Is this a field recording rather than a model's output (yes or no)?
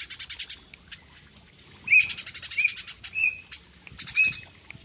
yes